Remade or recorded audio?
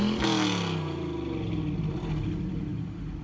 recorded